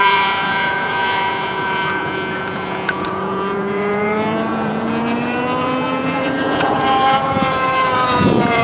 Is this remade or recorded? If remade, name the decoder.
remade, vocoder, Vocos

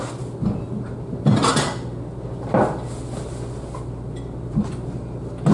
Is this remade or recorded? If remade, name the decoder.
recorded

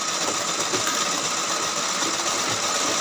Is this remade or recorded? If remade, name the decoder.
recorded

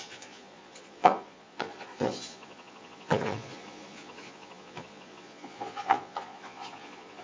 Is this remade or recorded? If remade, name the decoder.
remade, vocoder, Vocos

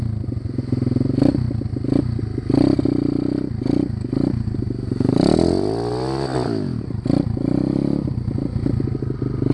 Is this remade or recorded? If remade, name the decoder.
recorded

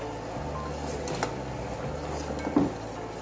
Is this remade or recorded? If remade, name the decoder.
recorded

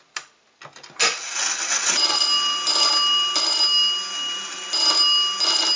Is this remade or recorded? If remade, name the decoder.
recorded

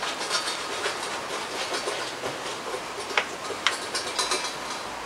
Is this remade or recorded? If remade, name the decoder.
recorded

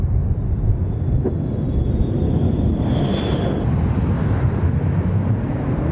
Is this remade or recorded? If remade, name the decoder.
recorded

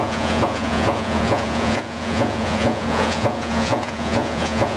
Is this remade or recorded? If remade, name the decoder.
remade, vocoder, Vocos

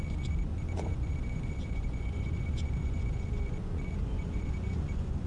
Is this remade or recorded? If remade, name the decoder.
remade, vocoder, Vocos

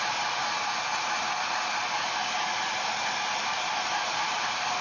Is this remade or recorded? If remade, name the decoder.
recorded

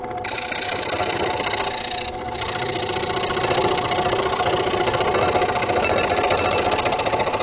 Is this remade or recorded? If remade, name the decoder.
recorded